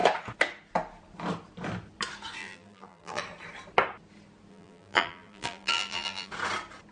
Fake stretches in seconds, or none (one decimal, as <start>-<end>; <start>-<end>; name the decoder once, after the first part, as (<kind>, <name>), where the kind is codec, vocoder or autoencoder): 2.4-3.2 (vocoder, BigVGAN v2); 4.5-6.3